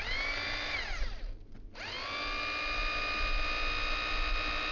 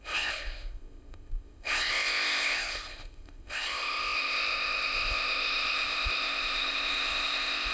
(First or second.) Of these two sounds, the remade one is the second